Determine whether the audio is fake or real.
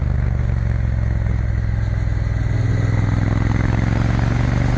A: real